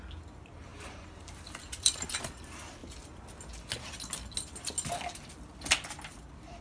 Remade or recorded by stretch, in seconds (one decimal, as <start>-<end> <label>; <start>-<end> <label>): 0.0-0.7 recorded; 0.7-2.1 remade; 2.1-6.6 recorded

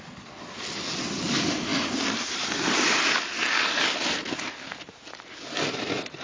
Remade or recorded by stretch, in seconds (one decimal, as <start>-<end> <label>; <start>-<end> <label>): 0.0-6.2 recorded

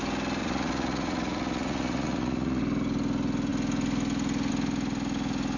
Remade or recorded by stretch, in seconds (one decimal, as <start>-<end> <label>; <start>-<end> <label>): 0.0-0.4 recorded; 0.4-2.6 remade; 2.6-5.6 recorded

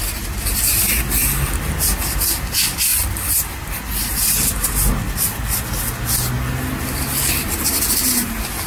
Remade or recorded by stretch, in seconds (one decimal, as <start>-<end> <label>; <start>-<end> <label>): 0.0-8.7 recorded

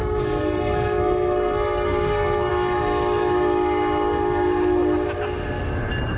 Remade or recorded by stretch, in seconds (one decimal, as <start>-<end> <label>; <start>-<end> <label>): 0.0-2.5 remade; 2.5-6.2 recorded

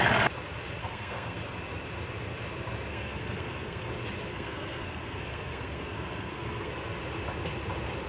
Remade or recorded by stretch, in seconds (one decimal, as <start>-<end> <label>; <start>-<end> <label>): 0.0-0.8 recorded; 0.8-1.4 remade; 1.4-2.9 recorded; 2.9-3.9 remade; 3.9-4.3 recorded; 4.3-6.7 remade; 6.7-8.1 recorded